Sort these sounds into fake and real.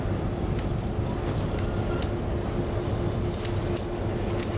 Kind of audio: real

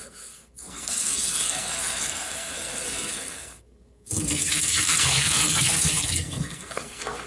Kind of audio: fake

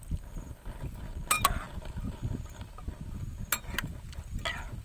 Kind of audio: real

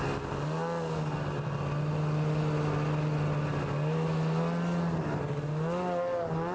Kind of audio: real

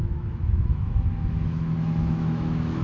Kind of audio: fake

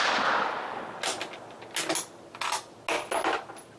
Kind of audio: real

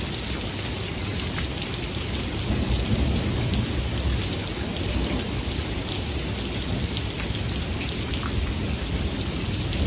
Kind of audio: real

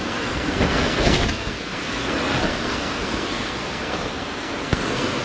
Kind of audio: fake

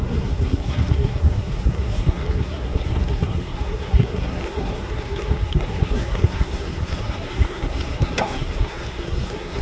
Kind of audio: fake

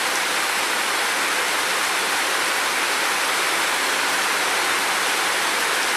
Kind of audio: real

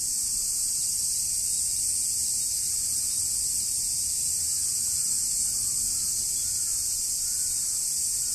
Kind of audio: real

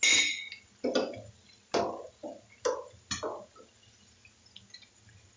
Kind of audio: real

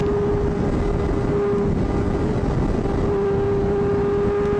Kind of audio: real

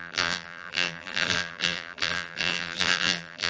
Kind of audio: fake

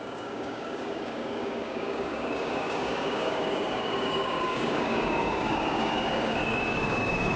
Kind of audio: fake